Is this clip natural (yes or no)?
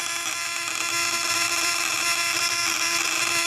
no